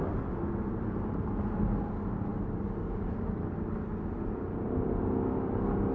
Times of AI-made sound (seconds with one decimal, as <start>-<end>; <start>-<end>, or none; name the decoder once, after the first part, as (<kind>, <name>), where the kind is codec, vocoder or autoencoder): none